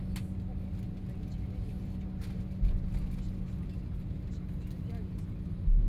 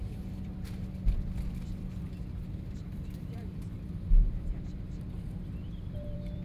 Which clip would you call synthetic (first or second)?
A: second